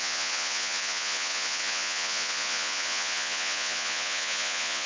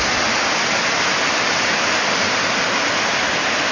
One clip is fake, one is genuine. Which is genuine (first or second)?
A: second